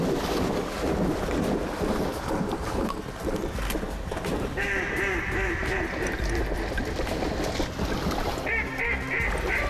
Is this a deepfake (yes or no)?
no